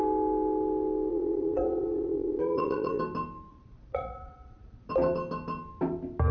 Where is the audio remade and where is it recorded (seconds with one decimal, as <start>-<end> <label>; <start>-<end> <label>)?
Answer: 0.0-1.1 recorded; 1.1-3.0 remade; 3.0-3.5 recorded; 3.5-4.9 remade; 4.9-6.3 recorded